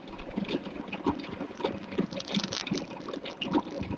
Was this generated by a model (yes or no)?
no